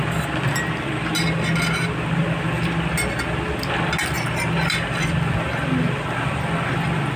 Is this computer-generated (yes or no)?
no